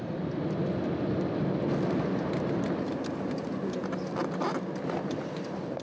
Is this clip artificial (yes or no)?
no